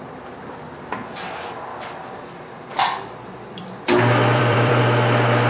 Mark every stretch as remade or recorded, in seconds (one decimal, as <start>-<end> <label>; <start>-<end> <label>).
0.0-1.7 recorded; 1.7-4.8 remade; 4.8-5.5 recorded